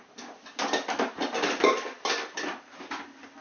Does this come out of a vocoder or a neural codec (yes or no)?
no